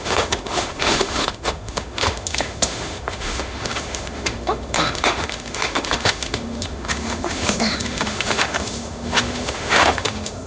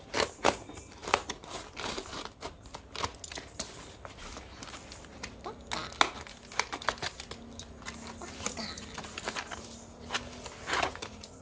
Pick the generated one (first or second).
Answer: first